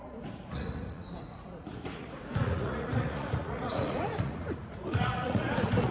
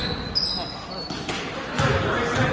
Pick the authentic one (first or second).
second